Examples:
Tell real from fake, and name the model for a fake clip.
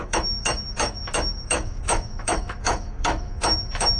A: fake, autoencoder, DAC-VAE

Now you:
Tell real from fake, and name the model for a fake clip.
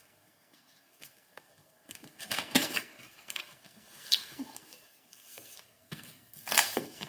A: fake, codec, SNAC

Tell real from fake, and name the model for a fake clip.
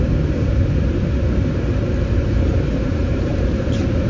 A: fake, vocoder, BigVGAN v2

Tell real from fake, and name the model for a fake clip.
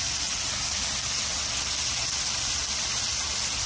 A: real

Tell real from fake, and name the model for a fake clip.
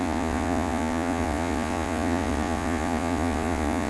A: fake, vocoder, Vocos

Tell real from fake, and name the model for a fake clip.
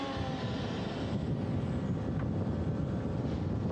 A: real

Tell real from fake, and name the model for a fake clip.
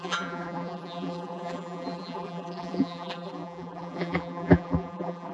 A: fake, vocoder, BigVGAN v2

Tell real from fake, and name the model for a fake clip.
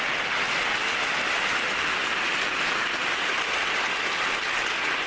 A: real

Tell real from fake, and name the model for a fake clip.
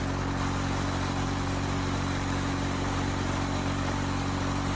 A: fake, vocoder, BigVGAN v2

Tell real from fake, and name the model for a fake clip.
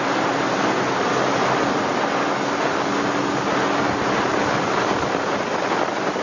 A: real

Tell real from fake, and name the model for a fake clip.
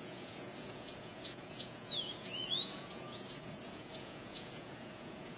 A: fake, vocoder, Vocos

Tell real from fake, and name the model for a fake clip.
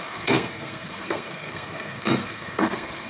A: fake, codec, SNAC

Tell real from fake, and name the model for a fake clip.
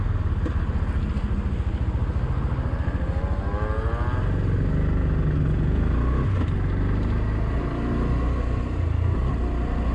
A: real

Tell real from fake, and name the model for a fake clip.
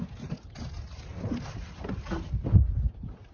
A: real